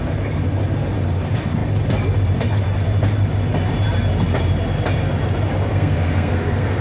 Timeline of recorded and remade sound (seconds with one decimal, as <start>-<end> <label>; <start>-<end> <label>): 0.0-5.7 recorded; 5.7-6.8 remade